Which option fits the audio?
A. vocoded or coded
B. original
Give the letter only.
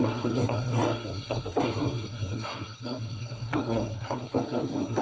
A